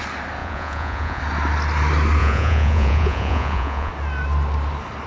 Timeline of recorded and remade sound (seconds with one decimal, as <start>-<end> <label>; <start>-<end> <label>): 0.0-0.4 recorded; 0.4-1.2 remade; 1.2-2.2 recorded; 2.2-3.9 remade; 3.9-5.1 recorded

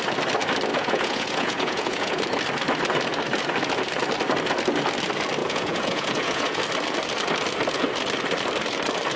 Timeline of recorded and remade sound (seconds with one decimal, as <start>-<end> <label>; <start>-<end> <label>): 0.0-0.7 recorded; 0.7-2.2 remade; 2.2-5.4 recorded; 5.4-6.6 remade; 6.6-9.2 recorded

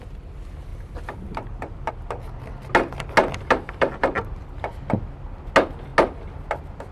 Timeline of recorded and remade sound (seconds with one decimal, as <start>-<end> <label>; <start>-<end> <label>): 0.0-0.7 recorded; 0.7-1.9 remade; 1.9-3.2 recorded; 3.2-4.7 remade; 4.7-6.9 recorded